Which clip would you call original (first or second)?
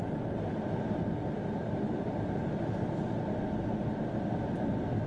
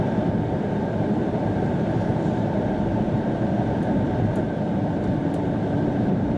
first